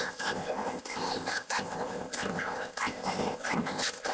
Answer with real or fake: fake